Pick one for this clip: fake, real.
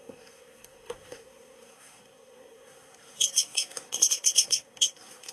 fake